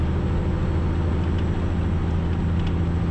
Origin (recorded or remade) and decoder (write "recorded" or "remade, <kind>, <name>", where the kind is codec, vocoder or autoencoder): recorded